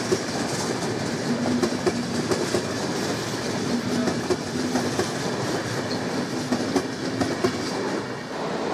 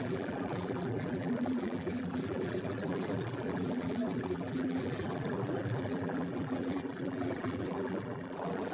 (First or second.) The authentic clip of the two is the first